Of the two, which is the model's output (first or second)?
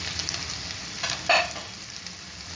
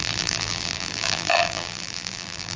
second